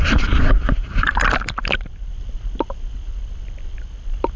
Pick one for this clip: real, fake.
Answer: fake